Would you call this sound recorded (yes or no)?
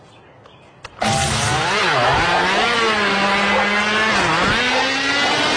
yes